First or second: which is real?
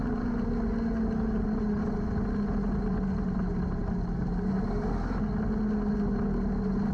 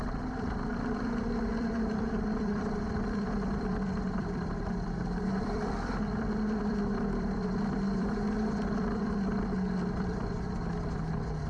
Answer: first